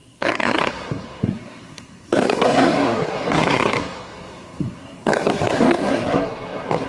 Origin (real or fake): fake